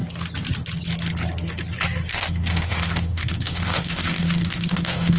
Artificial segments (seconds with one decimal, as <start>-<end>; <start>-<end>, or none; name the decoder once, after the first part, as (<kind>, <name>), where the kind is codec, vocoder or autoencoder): 2.1-5.2 (autoencoder, DAC-VAE)